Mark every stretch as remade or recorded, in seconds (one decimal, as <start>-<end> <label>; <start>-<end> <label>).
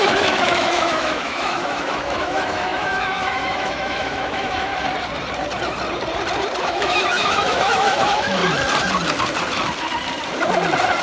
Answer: 0.0-4.7 remade; 4.7-6.6 recorded; 6.6-8.4 remade; 8.4-11.0 recorded